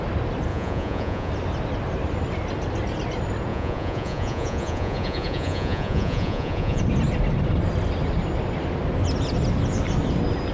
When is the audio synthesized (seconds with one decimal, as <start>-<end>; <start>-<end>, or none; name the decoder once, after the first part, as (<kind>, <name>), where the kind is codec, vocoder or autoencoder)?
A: 0.5-1.3 (vocoder, Vocos); 3.5-6.8